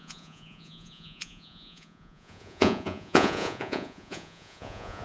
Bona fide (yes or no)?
no